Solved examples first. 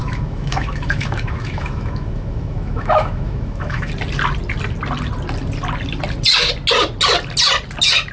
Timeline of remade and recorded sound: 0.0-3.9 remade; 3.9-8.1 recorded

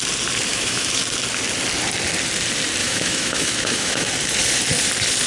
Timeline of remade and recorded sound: 0.0-0.5 recorded; 0.5-1.0 remade; 1.0-2.8 recorded; 2.8-4.1 remade; 4.1-5.3 recorded

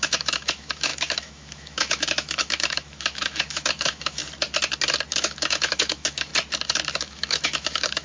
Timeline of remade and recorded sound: 0.0-4.2 remade; 4.2-5.1 recorded; 5.1-6.3 remade; 6.3-6.9 recorded; 6.9-8.0 remade

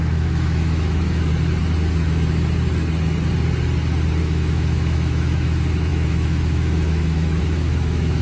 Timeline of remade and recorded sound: 0.0-1.3 remade; 1.3-4.2 recorded; 4.2-8.2 remade